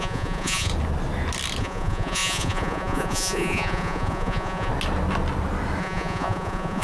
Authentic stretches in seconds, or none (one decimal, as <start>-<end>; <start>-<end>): 0.7-1.6; 4.7-5.8